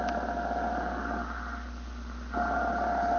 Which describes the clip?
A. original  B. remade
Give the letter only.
A